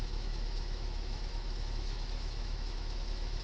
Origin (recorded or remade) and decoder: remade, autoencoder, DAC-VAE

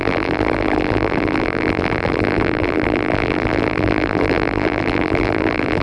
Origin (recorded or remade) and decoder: remade, vocoder, BigVGAN v2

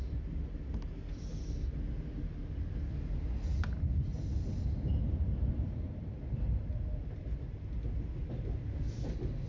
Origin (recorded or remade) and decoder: recorded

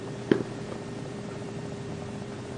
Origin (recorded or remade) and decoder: remade, vocoder, BigVGAN v2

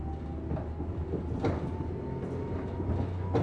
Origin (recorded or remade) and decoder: recorded